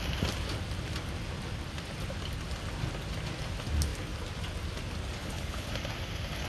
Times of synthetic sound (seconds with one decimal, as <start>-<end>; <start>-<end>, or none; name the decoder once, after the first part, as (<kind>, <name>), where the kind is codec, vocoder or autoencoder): 5.2-5.7 (codec, HILCodec)